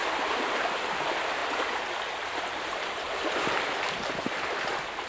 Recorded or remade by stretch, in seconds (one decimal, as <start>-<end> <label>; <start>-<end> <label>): 0.0-5.1 remade